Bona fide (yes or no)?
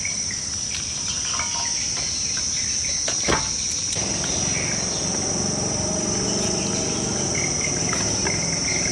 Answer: yes